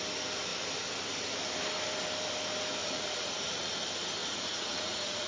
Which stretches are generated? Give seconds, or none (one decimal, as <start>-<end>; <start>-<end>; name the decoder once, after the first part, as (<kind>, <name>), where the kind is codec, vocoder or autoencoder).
2.8-3.7 (vocoder, Vocos); 4.2-5.3

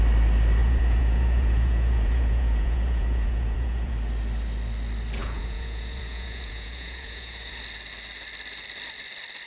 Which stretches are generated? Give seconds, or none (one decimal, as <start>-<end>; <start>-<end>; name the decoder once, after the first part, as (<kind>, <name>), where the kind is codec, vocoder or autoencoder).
0.6-3.9 (vocoder, Vocos); 5.2-7.6

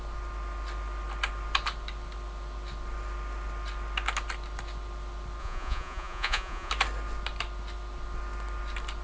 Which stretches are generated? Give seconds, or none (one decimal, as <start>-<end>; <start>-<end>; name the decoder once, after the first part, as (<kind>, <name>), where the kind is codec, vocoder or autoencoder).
5.4-6.7 (vocoder, Vocos)

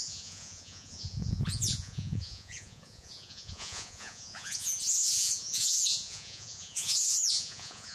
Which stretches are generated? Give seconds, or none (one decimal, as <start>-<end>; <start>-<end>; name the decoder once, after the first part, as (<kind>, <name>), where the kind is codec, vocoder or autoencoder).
0.0-7.9 (vocoder, Vocos)